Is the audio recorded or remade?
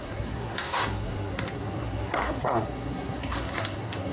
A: remade